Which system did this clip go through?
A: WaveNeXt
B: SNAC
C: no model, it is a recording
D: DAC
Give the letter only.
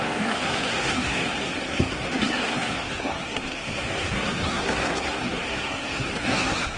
B